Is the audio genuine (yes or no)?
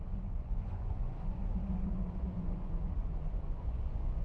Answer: no